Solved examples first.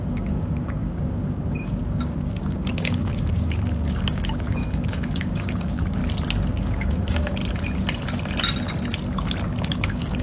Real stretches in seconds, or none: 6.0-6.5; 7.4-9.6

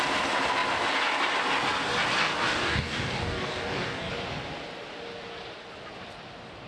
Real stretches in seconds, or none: 0.0-2.2; 4.1-6.7

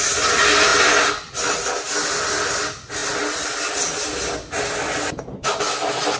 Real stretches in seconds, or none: 0.0-6.2

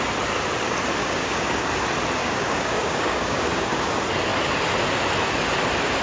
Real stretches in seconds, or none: 0.0-1.0; 1.7-2.2; 3.9-6.0

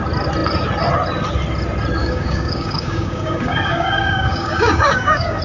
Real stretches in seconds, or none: 0.0-2.0

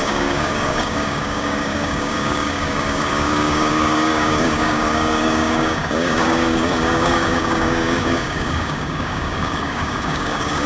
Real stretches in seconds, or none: none